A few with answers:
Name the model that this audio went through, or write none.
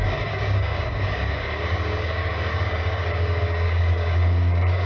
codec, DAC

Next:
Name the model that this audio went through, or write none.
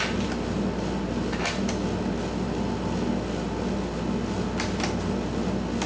none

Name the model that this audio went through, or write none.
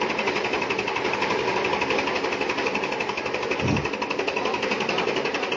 none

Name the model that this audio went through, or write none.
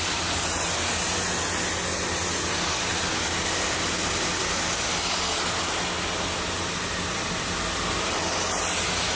none